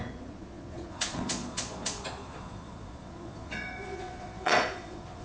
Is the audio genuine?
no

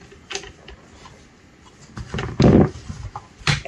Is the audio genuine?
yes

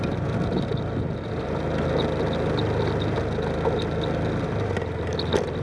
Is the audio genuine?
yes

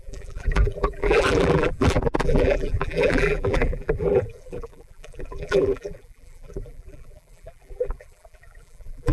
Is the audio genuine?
no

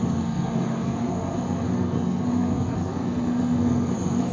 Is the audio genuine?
no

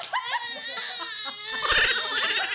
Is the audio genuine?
yes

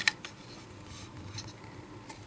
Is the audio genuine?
no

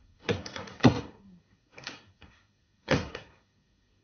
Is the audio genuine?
no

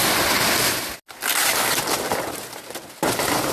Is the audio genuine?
yes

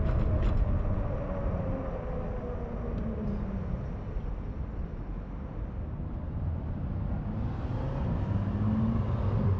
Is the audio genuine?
yes